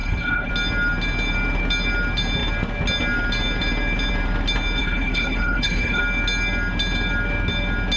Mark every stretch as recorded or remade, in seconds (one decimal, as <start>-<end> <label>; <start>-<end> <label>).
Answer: 0.0-0.5 remade; 0.5-4.8 recorded; 4.8-6.0 remade; 6.0-8.0 recorded